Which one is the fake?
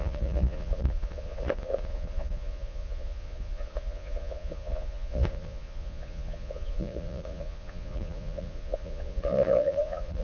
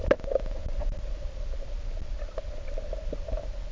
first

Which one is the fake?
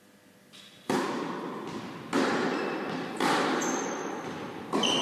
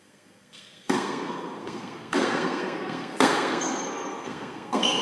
second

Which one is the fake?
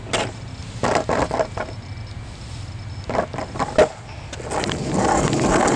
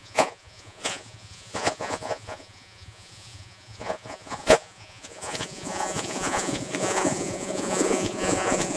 second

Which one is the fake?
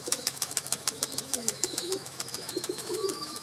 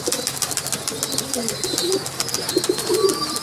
first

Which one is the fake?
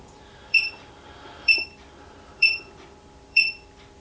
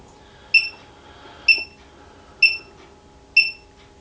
first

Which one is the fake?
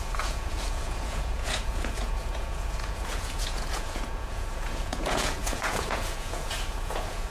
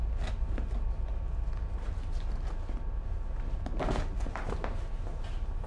first